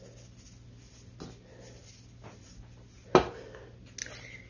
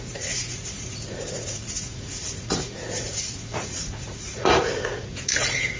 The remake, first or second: second